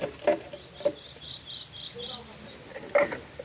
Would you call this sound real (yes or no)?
yes